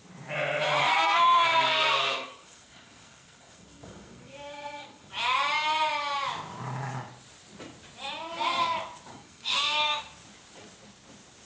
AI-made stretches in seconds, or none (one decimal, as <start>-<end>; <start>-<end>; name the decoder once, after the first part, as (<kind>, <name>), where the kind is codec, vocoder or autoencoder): 0.8-5.1 (codec, SNAC); 9.1-10.0